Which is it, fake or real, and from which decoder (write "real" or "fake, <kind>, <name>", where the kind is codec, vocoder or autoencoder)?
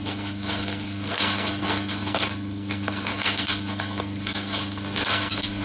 fake, codec, SNAC